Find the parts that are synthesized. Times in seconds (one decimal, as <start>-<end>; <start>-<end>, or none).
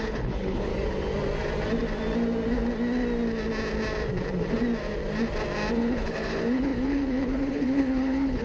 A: 0.0-0.7; 5.7-8.4